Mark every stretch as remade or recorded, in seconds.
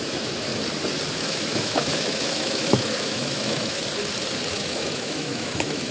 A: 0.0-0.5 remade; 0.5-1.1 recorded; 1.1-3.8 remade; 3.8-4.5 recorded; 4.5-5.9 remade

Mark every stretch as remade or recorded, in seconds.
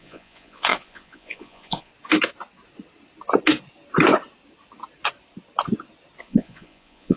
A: 0.0-1.9 remade; 1.9-6.2 recorded; 6.2-7.2 remade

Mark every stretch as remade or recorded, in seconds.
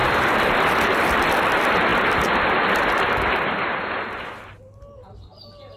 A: 0.0-1.5 remade; 1.5-5.8 recorded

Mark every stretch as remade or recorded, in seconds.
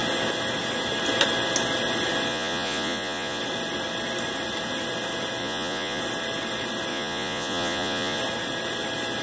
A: 0.0-2.3 recorded; 2.3-3.4 remade; 3.4-5.4 recorded; 5.4-6.0 remade; 6.0-6.9 recorded; 6.9-8.2 remade; 8.2-9.2 recorded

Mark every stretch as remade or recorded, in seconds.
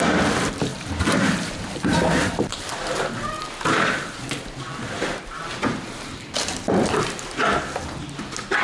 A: 0.0-0.7 recorded; 0.7-2.7 remade; 2.7-4.2 recorded; 4.2-5.4 remade; 5.4-6.1 recorded; 6.1-7.4 remade; 7.4-8.6 recorded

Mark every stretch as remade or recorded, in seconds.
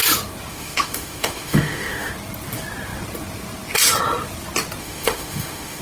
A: 0.0-0.5 recorded; 0.5-2.1 remade; 2.1-4.8 recorded; 4.8-5.8 remade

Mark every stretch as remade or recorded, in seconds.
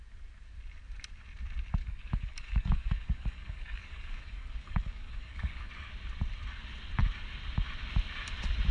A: 0.0-1.8 recorded; 1.8-5.7 remade; 5.7-8.7 recorded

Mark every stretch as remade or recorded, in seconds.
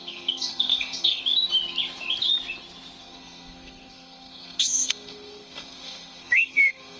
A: 0.0-1.2 remade; 1.2-3.0 recorded; 3.0-7.0 remade